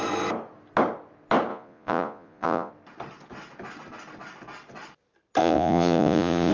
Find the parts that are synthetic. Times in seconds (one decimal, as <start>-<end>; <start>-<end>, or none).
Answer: 1.5-2.7; 5.4-6.5